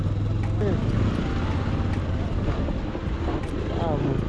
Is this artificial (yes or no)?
no